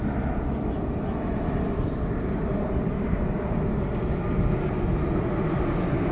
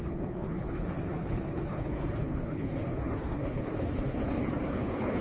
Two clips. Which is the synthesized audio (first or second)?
second